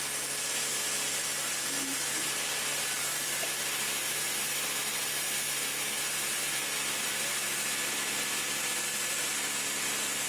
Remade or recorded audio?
recorded